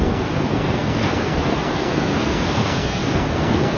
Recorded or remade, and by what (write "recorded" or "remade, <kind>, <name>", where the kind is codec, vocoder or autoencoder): remade, codec, SNAC